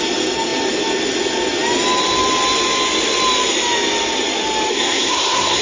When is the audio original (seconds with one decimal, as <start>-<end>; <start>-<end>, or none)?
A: 0.0-4.7

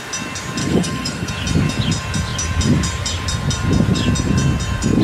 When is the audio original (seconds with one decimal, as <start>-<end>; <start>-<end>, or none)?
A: 0.0-0.6; 1.3-5.0

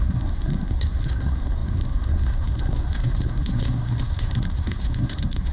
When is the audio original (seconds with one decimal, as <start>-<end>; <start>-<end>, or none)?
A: none

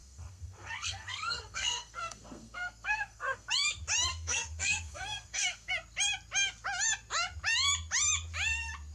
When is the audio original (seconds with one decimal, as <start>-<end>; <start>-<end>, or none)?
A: 3.5-4.1; 5.7-8.9

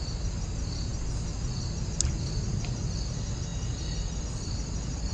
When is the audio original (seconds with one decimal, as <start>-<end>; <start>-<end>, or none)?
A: 0.0-5.1